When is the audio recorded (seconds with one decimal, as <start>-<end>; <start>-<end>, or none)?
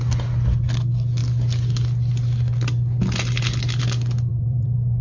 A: 0.0-4.3